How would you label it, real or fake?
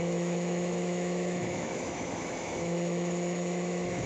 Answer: fake